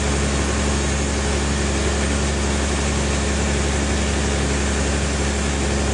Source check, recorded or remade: recorded